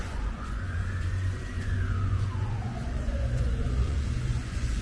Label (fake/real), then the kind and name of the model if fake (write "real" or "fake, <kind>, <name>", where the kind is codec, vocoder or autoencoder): fake, vocoder, Vocos